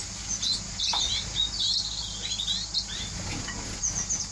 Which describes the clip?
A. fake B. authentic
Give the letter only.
B